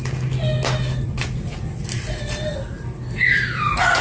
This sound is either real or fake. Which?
real